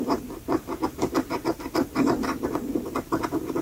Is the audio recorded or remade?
remade